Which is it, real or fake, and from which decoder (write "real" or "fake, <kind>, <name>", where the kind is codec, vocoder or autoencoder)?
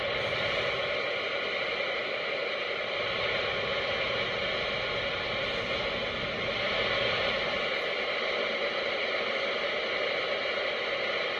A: real